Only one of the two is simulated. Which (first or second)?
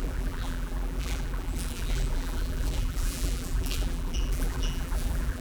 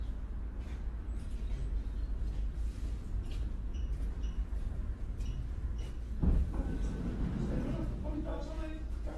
first